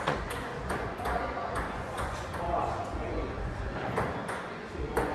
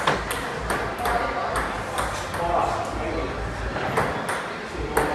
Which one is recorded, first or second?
second